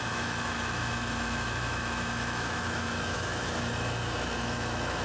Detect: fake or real fake